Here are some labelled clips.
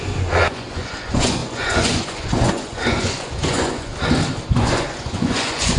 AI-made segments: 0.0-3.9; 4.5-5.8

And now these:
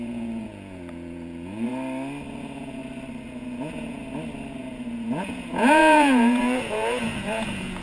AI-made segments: 0.0-1.7; 2.4-2.8; 3.3-4.0; 4.6-7.8

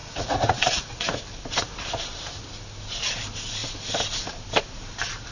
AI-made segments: 0.0-1.2